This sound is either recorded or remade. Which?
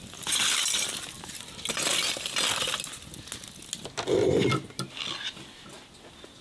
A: recorded